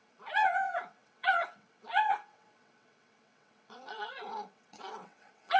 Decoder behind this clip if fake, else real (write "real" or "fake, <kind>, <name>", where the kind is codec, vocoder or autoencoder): fake, vocoder, WaveNeXt